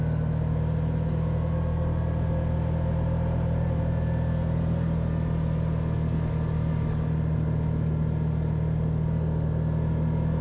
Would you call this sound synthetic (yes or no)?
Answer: no